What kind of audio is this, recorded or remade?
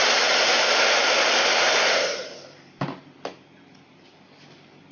recorded